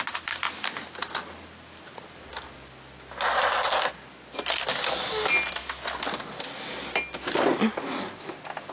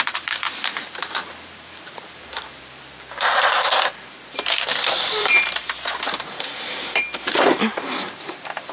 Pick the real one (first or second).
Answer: first